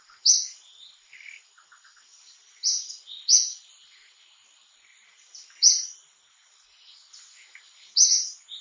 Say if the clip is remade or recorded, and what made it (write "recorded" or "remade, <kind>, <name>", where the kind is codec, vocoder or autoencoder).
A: recorded